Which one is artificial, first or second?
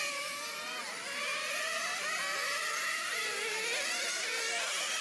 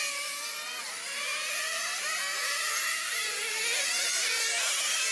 first